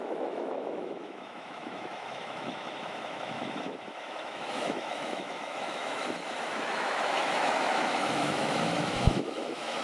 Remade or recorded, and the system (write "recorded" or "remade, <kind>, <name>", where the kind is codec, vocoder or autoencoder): remade, autoencoder, DAC-VAE